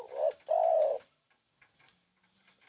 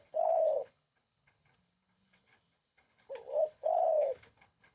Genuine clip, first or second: first